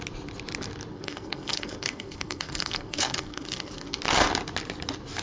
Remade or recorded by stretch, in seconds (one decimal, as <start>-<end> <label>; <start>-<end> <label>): 0.0-0.9 recorded; 0.9-4.0 remade; 4.0-5.2 recorded